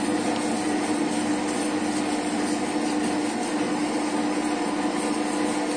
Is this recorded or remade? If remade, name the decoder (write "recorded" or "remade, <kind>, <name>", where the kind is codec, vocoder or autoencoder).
recorded